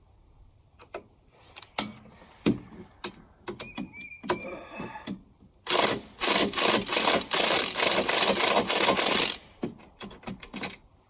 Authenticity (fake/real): real